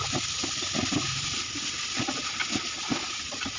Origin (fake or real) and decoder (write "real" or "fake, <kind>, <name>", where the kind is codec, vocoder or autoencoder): real